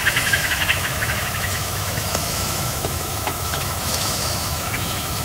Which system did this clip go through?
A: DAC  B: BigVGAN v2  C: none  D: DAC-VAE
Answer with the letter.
D